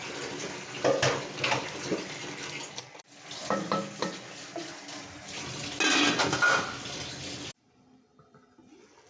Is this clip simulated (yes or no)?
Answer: no